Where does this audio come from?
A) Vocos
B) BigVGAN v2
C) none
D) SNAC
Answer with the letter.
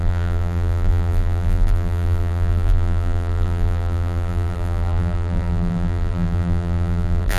B